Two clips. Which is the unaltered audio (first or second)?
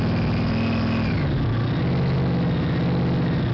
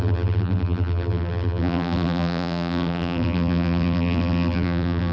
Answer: first